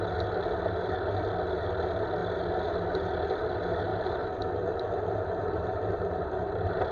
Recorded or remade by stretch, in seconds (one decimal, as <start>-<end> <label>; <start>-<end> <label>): 0.0-3.9 recorded; 3.9-6.9 remade